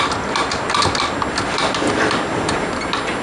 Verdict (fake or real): real